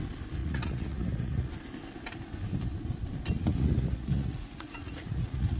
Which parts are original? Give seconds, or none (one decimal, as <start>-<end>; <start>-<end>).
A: 0.0-0.4; 1.5-3.4

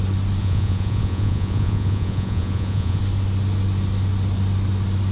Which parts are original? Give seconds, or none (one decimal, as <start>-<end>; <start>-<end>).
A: 0.0-0.4; 3.0-5.1

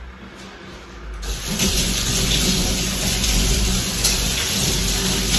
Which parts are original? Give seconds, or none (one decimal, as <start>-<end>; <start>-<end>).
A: 0.0-1.3; 4.5-5.4

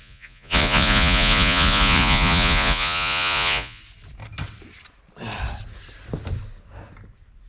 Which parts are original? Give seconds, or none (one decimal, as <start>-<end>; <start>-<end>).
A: 3.8-7.5

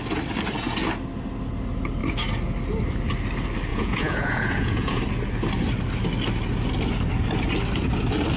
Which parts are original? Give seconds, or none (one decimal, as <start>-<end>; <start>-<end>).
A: 0.0-3.7; 5.0-8.4

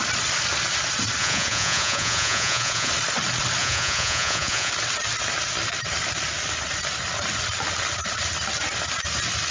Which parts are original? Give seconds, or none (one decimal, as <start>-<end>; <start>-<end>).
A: 0.0-1.2; 2.9-3.6; 4.7-9.5

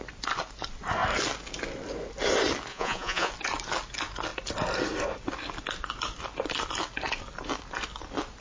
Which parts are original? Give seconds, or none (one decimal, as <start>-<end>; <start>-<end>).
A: 0.0-2.7; 3.3-8.4

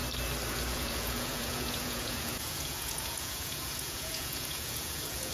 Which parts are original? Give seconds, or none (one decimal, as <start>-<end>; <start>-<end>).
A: 0.0-0.5